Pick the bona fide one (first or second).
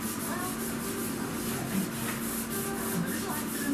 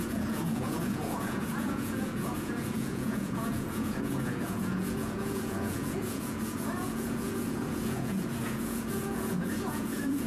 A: first